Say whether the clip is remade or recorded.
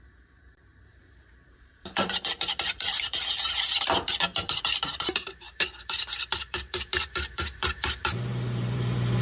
remade